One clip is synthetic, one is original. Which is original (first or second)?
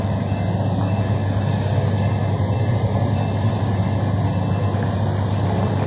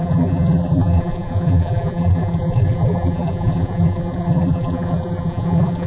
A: first